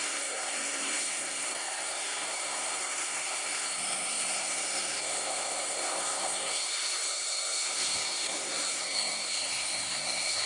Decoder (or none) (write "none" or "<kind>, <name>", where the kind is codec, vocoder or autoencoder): codec, SNAC